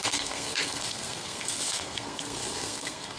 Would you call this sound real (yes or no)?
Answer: no